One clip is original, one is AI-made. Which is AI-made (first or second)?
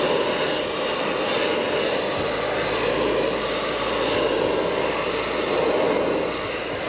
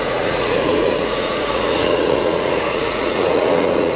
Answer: second